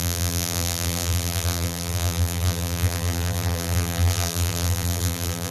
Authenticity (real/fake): fake